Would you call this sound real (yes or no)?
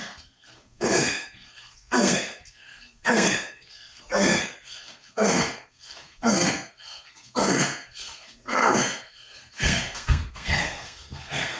no